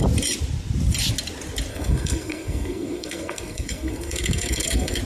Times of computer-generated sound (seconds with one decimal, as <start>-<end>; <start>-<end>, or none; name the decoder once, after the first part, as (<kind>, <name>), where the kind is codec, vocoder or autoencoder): 1.7-5.0 (codec, SNAC)